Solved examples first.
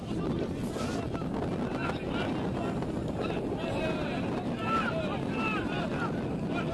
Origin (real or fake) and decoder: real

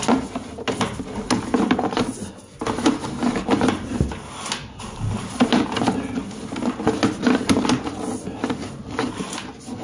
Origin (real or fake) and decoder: real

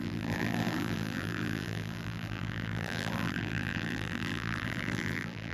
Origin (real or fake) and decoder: fake, vocoder, BigVGAN v2